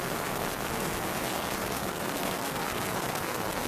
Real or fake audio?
fake